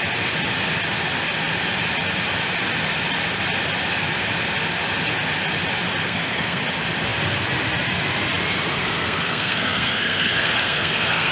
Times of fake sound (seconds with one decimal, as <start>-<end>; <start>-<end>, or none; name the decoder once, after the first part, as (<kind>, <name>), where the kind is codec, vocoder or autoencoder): 6.0-6.6 (codec, SNAC); 8.8-11.3